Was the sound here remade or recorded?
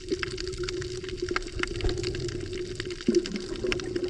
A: recorded